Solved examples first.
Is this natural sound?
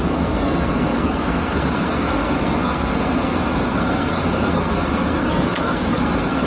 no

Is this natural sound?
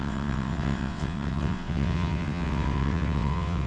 no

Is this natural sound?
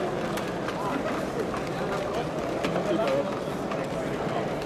yes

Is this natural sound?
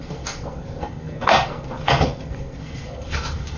no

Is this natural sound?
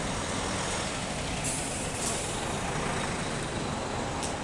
yes